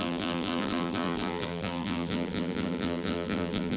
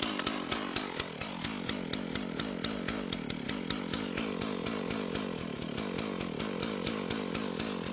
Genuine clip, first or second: second